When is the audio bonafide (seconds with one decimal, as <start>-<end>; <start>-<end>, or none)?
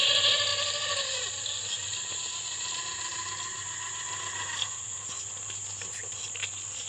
0.0-0.5; 1.3-6.9